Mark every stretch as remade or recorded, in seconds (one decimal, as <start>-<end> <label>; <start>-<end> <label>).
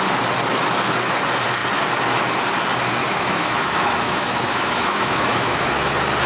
0.0-3.0 recorded; 3.0-5.7 remade; 5.7-6.3 recorded